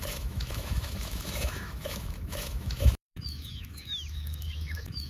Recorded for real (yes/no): no